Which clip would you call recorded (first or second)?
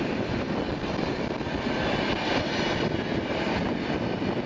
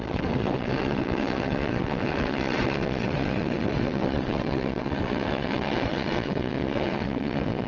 first